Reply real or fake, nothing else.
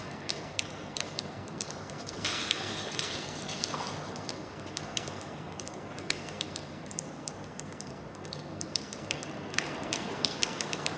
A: fake